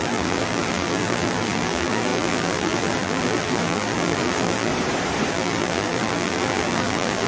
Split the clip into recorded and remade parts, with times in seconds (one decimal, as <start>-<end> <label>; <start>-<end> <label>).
0.0-4.7 remade; 4.7-5.3 recorded; 5.3-7.3 remade